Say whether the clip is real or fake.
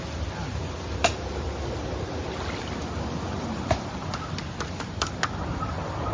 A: real